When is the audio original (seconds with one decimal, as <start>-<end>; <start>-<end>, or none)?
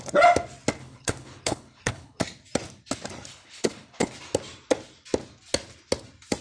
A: 0.0-0.8; 2.2-3.3; 4.1-6.4